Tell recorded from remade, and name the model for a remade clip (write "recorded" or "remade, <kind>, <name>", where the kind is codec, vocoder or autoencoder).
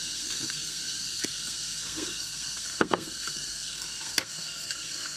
remade, codec, SNAC